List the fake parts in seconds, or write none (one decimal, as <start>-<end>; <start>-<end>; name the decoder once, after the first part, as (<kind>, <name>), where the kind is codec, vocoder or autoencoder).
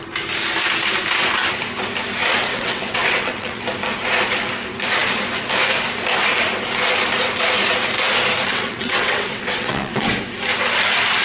2.5-3.6 (vocoder, WaveNeXt); 8.5-10.1